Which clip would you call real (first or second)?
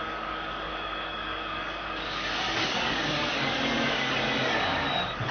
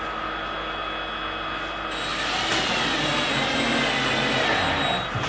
second